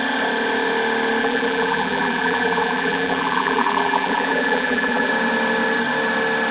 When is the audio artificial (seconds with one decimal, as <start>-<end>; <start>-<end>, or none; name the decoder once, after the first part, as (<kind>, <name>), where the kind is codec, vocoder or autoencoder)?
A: 1.2-5.1 (vocoder, BigVGAN v2)